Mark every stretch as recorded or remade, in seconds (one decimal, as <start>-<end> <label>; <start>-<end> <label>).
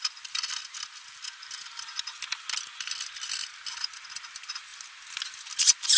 0.0-6.0 recorded